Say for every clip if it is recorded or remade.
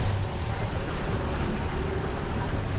remade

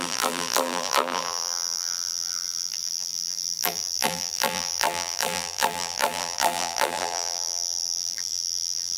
remade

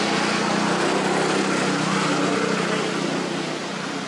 recorded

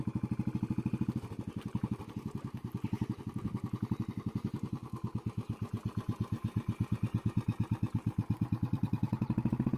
remade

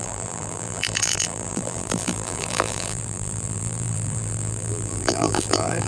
remade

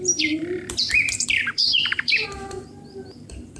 remade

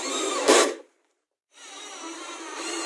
remade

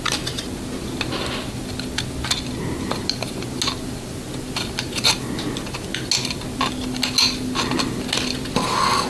recorded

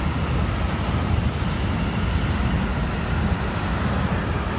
recorded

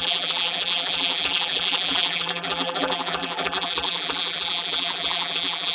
remade